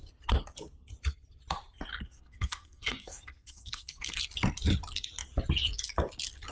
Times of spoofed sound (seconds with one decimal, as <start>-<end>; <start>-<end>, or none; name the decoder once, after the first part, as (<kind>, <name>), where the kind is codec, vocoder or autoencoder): 1.9-4.2 (codec, SNAC)